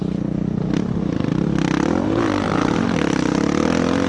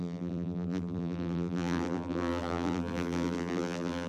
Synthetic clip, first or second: second